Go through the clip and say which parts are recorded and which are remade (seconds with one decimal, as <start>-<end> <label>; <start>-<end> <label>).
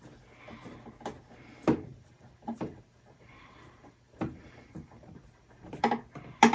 0.0-1.9 recorded; 1.9-5.7 remade; 5.7-6.5 recorded